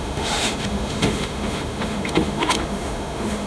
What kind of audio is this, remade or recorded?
remade